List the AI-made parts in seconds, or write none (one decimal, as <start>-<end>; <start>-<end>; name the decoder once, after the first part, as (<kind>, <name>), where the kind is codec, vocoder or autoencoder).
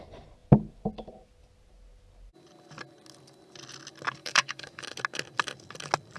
4.2-4.8 (codec, DAC)